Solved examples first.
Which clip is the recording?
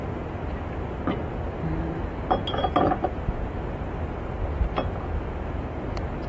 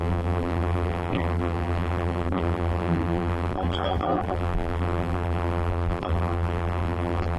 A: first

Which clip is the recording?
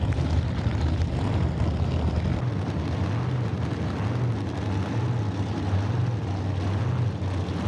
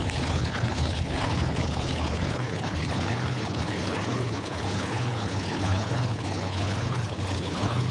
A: first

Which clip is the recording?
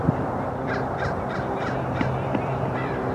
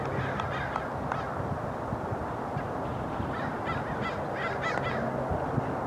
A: second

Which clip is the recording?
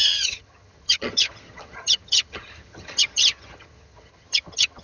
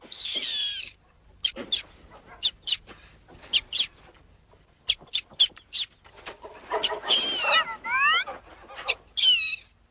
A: second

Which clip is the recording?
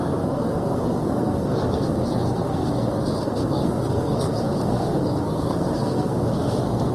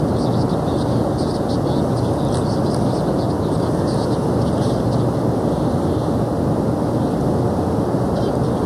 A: second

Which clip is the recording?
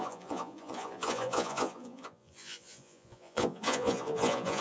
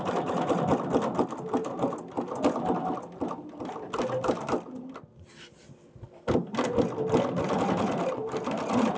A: second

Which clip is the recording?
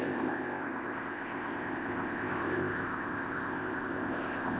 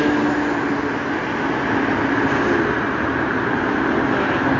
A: second